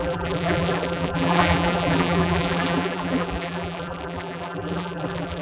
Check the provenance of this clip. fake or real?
fake